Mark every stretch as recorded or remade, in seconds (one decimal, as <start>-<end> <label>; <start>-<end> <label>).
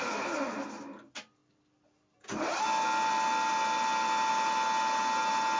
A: 0.0-5.6 recorded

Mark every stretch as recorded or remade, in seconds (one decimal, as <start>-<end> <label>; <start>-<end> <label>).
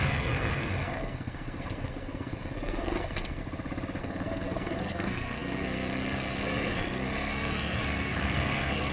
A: 0.0-3.4 remade; 3.4-4.0 recorded; 4.0-8.9 remade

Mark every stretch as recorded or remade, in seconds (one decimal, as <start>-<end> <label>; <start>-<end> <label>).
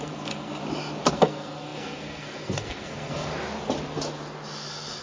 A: 0.0-0.6 remade; 0.6-1.1 recorded; 1.1-3.3 remade; 3.3-5.0 recorded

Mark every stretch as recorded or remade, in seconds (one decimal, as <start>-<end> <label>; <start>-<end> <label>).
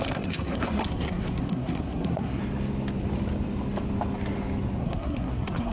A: 0.0-2.4 remade; 2.4-4.8 recorded; 4.8-5.7 remade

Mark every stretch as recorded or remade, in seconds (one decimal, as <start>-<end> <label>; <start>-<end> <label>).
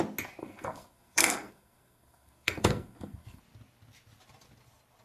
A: 0.0-0.4 recorded; 0.4-3.4 remade; 3.4-5.0 recorded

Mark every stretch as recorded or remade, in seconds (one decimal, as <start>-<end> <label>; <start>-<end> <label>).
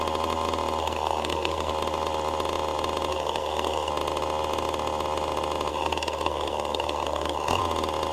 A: 0.0-0.8 recorded; 0.8-1.7 remade; 1.7-3.1 recorded; 3.1-3.9 remade; 3.9-5.7 recorded; 5.7-7.6 remade; 7.6-8.1 recorded